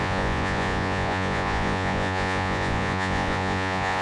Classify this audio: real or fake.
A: fake